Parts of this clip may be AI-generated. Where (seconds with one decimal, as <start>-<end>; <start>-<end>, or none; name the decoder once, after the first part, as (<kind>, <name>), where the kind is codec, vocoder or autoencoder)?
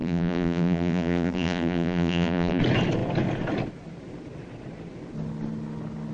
0.0-2.6 (vocoder, BigVGAN v2)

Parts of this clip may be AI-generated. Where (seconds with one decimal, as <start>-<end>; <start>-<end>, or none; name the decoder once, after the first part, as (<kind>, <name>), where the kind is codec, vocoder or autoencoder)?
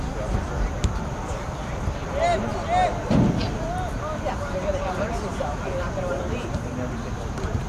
5.3-6.6 (vocoder, BigVGAN v2)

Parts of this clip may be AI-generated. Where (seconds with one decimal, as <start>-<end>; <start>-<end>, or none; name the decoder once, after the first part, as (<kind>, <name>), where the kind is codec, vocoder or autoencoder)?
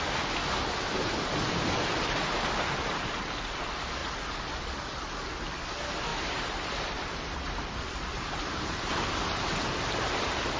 4.0-4.7 (vocoder, BigVGAN v2); 6.1-8.9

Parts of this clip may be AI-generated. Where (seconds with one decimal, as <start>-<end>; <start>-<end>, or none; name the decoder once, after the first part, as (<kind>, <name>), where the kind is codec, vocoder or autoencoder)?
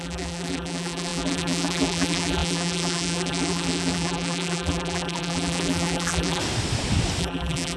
0.0-6.4 (vocoder, BigVGAN v2); 7.2-7.8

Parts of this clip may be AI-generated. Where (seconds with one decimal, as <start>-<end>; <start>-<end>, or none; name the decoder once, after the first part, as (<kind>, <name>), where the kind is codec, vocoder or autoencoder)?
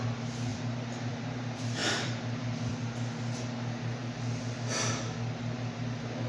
0.5-1.1 (vocoder, BigVGAN v2); 1.8-2.7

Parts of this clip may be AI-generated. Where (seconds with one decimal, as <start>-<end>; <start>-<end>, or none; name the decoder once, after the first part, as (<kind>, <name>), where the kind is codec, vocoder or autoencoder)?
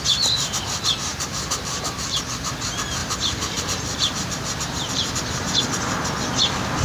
1.1-2.0 (vocoder, BigVGAN v2); 3.0-5.6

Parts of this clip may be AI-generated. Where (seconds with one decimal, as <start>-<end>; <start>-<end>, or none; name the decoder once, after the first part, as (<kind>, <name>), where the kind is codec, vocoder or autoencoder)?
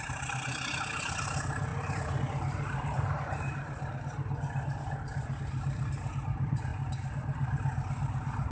0.0-1.7 (vocoder, BigVGAN v2); 2.2-8.5